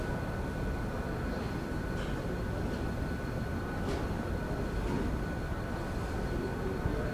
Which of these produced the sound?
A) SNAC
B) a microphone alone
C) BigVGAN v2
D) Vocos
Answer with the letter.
B